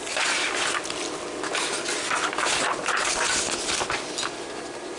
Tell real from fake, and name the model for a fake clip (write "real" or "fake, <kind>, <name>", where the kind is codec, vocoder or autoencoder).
real